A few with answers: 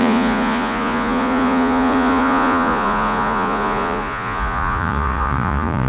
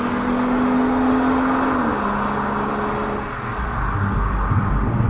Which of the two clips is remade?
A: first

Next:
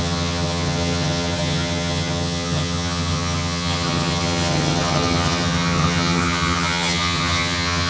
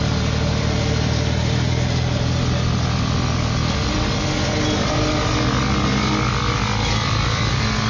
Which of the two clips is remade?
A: first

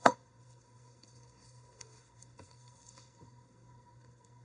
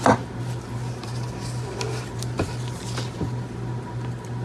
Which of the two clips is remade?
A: first